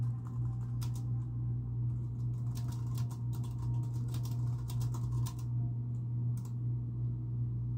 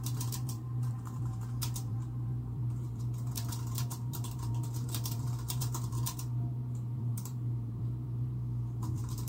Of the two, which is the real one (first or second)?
first